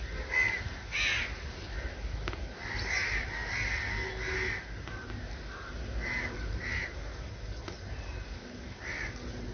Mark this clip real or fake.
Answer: real